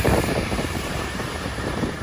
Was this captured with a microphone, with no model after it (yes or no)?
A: no